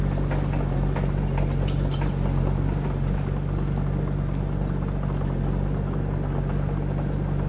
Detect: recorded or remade recorded